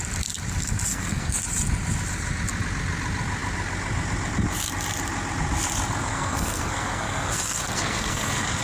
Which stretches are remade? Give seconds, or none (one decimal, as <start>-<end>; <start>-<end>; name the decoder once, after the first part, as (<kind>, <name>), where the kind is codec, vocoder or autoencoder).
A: 0.9-1.4 (codec, SNAC); 6.1-8.6